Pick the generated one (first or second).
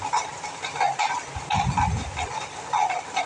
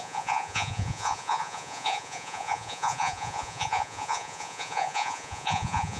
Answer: second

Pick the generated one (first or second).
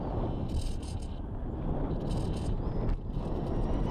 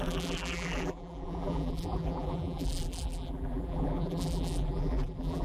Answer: second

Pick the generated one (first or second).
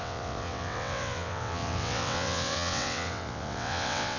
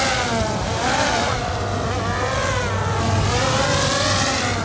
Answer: first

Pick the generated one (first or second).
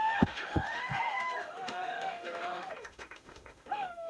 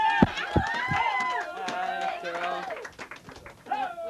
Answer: first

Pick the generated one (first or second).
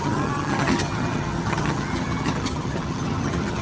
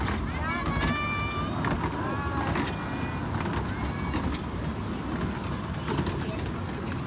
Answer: first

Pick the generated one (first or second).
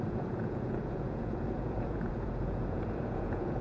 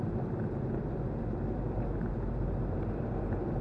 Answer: first